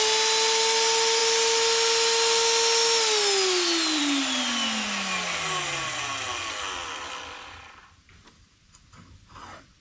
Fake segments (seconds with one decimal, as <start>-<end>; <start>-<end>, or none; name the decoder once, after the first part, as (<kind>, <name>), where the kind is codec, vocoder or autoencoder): none

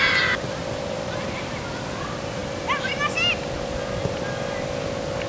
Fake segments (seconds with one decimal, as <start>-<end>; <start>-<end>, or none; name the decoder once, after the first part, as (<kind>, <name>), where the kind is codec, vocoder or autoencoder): none

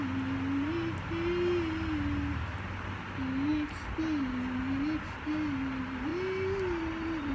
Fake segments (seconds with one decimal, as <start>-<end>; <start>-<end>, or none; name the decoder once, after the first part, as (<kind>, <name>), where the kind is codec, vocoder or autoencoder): none

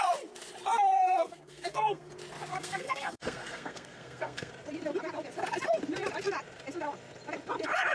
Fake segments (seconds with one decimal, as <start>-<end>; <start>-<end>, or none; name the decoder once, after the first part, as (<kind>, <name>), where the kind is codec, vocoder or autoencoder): 0.7-2.1 (codec, SNAC); 2.5-4.5

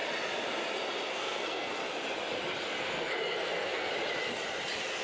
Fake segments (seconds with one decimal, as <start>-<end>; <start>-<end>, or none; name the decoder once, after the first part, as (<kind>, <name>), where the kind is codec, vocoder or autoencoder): 1.1-1.8 (codec, SNAC); 2.8-3.9

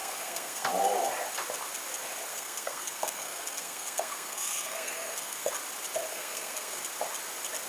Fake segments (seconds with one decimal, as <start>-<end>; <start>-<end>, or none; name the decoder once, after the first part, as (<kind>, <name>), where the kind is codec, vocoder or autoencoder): 0.0-0.7 (codec, SNAC); 2.3-5.5; 6.1-6.8

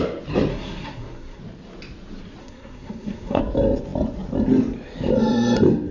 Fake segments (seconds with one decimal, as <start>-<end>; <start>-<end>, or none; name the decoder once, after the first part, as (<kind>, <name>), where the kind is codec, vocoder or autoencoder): 0.5-1.4 (codec, SNAC); 2.4-3.4